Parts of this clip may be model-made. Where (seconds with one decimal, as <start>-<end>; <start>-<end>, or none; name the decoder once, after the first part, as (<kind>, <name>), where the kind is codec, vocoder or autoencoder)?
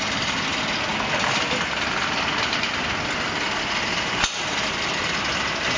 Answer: none